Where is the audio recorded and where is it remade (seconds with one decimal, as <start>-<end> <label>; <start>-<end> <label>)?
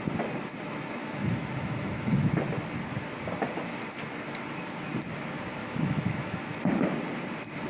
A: 0.0-1.0 recorded; 1.0-2.3 remade; 2.3-5.6 recorded; 5.6-6.4 remade; 6.4-7.7 recorded